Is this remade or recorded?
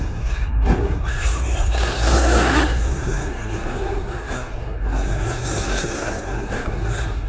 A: remade